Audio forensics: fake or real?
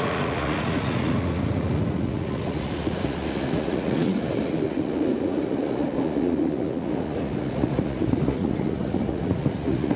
fake